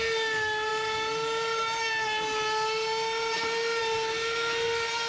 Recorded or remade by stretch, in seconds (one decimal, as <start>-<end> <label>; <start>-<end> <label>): 0.0-5.1 recorded